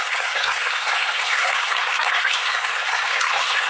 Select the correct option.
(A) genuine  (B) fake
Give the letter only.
B